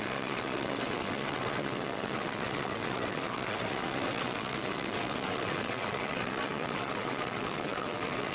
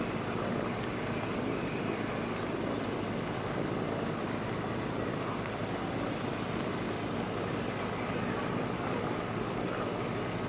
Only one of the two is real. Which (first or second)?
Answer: second